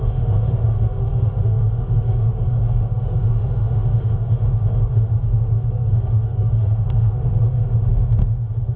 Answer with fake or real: fake